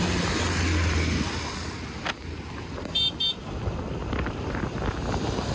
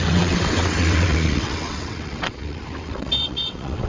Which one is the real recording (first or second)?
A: first